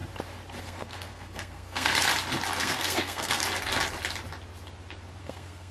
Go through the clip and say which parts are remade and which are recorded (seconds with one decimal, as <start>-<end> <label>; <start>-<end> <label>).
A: 0.0-0.6 recorded; 0.6-2.1 remade; 2.1-2.6 recorded; 2.6-3.4 remade; 3.4-5.2 recorded; 5.2-5.7 remade